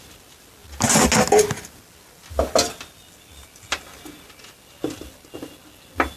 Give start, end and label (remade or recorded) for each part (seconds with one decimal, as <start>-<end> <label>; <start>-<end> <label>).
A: 0.0-6.2 recorded